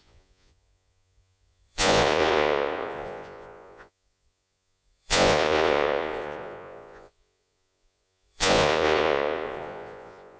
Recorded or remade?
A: remade